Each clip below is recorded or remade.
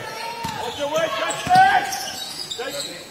remade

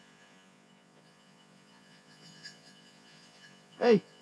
remade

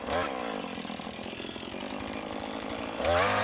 recorded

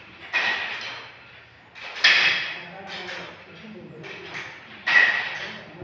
recorded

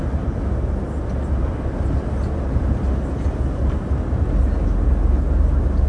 recorded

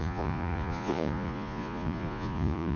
remade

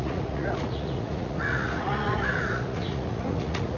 remade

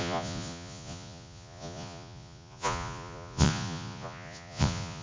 remade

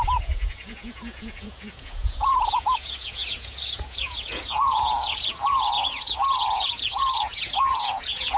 remade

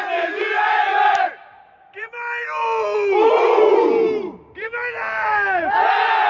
recorded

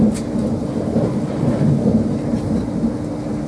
recorded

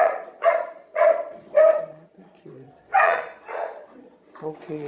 remade